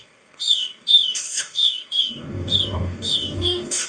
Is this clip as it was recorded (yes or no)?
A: no